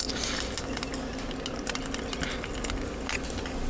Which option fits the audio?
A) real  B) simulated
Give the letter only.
A